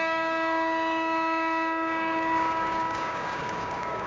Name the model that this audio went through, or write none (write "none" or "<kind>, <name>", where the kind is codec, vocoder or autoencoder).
codec, DAC